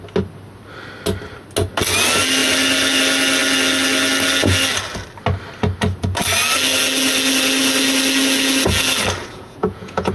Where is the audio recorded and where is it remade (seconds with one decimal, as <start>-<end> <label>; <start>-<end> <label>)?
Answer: 0.0-9.2 recorded; 9.2-10.1 remade

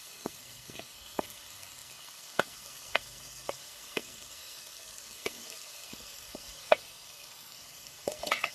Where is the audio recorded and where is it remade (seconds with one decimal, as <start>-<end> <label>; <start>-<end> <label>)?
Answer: 0.0-8.5 remade